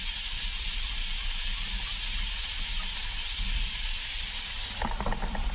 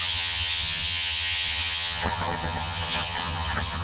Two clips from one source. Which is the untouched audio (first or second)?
first